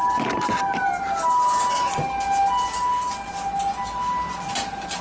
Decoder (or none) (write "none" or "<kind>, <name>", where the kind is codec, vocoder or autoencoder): none